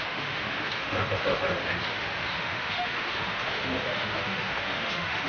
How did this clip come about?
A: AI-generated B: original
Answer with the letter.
A